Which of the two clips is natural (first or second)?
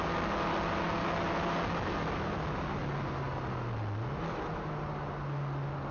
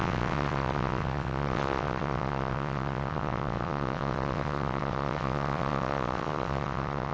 first